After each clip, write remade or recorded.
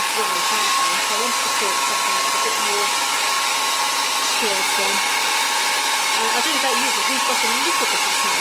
recorded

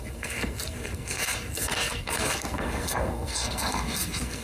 remade